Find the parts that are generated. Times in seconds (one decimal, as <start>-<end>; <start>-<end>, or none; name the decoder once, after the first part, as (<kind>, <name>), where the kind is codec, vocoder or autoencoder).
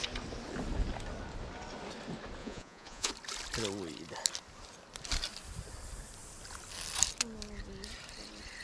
2.4-3.1 (vocoder, Vocos)